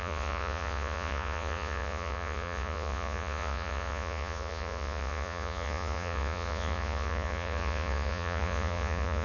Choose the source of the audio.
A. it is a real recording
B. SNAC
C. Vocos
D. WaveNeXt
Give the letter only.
C